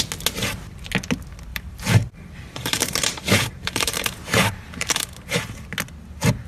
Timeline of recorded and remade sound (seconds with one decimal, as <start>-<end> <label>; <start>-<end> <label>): 0.0-1.5 recorded; 1.5-5.4 remade; 5.4-6.5 recorded